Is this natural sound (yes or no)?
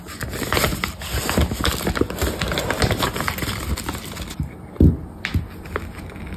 yes